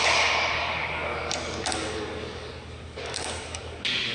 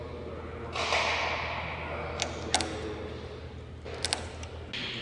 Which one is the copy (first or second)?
first